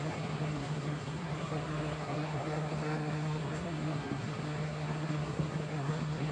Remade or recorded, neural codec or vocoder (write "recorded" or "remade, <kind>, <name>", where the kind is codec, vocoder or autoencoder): remade, codec, SNAC